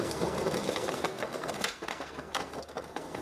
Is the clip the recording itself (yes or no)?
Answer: no